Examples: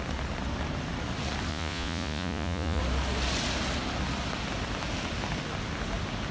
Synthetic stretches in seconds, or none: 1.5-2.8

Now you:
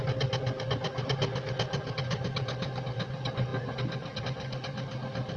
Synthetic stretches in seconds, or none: none

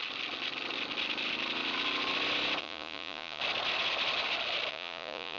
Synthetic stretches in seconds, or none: 2.6-3.4; 4.7-5.4